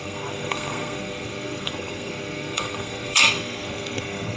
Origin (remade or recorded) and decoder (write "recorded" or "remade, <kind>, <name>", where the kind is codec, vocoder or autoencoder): remade, codec, SNAC